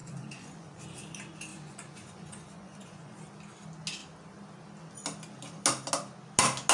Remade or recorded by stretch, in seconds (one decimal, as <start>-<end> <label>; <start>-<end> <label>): 0.0-0.8 remade; 0.8-1.5 recorded; 1.5-3.2 remade; 3.2-6.7 recorded